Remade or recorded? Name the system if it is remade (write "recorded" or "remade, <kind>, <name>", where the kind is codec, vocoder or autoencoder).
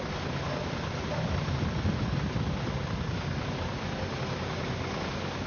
recorded